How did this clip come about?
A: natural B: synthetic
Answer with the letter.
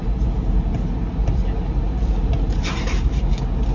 A